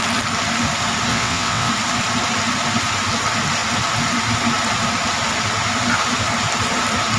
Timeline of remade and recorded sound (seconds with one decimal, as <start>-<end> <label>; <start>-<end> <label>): 0.0-1.1 recorded; 1.1-1.7 remade; 1.7-7.2 recorded